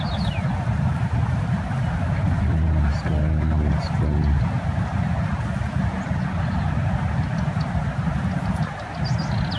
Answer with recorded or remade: recorded